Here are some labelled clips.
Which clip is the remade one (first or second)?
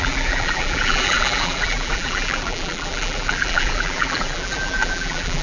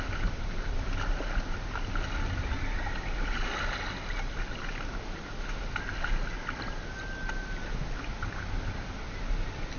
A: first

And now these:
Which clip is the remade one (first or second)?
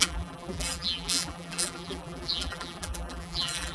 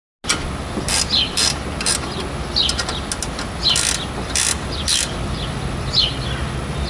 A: first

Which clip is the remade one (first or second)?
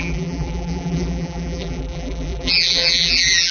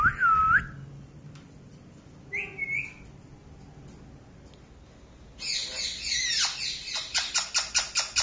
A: first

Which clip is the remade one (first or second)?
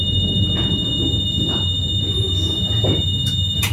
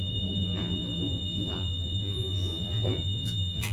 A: second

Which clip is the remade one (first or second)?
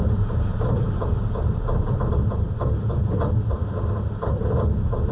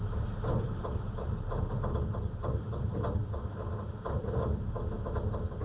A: first